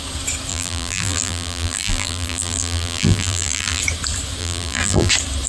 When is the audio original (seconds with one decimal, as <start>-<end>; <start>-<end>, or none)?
0.0-0.5; 3.8-4.4; 5.1-5.5